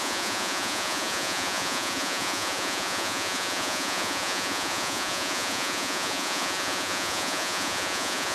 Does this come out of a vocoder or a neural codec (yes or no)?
yes